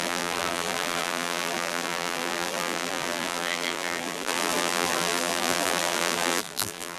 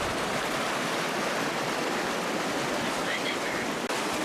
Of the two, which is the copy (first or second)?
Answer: first